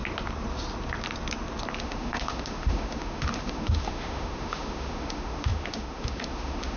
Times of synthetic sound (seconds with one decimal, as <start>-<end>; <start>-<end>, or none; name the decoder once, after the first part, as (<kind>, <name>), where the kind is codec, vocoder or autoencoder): 1.8-6.8 (autoencoder, DAC-VAE)